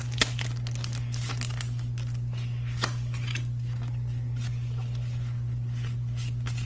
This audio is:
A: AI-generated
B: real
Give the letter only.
B